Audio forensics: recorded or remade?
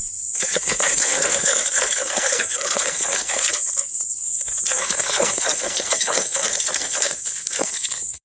remade